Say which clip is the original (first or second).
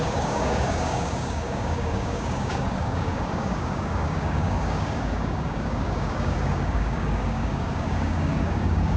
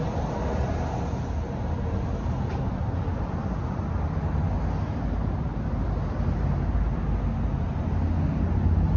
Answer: second